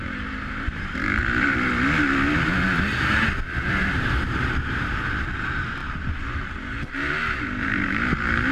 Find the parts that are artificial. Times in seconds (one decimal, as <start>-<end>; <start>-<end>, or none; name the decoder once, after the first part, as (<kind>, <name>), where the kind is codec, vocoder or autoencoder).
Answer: 0.0-1.7 (vocoder, BigVGAN v2); 3.7-5.8; 6.9-8.5